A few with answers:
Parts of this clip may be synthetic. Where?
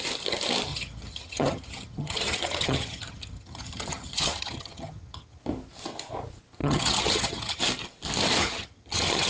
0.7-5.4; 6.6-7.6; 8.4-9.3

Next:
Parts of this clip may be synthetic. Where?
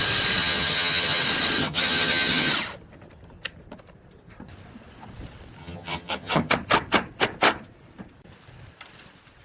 0.4-1.2; 1.6-2.5; 5.6-6.5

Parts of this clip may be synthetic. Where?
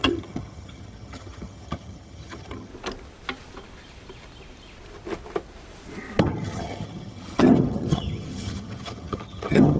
0.0-2.7; 6.2-9.8